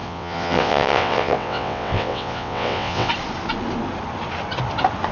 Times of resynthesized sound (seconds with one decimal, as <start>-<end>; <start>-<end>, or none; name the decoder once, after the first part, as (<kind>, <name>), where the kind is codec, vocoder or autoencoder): 0.0-3.1 (vocoder, WaveNeXt)